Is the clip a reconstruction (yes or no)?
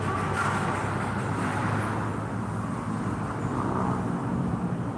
no